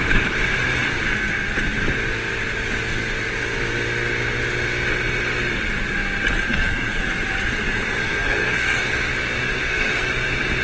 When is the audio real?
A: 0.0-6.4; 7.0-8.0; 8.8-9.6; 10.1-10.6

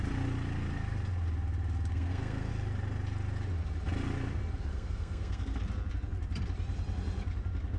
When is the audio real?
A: 0.0-1.9; 2.5-4.7; 5.6-7.8